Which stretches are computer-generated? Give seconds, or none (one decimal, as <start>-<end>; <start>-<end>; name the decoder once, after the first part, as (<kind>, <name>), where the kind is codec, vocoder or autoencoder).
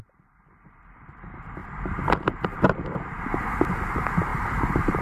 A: 4.3-5.0 (vocoder, BigVGAN v2)